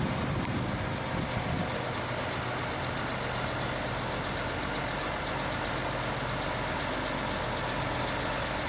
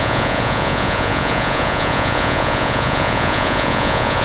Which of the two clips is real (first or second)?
first